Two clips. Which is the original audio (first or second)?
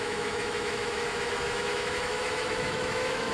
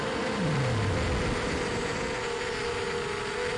second